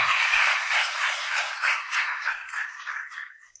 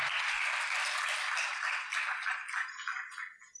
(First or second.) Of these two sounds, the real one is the second